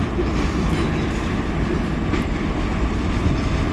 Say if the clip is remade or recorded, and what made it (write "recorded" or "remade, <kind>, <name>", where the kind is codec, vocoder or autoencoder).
recorded